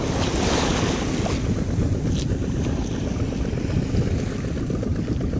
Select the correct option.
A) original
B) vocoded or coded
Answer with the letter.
A